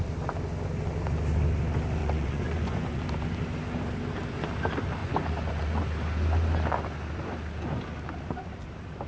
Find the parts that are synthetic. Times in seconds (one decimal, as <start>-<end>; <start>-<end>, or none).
2.0-3.0; 5.0-5.8